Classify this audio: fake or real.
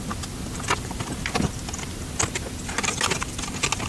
real